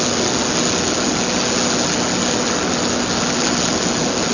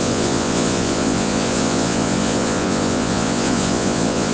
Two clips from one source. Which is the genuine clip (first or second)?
first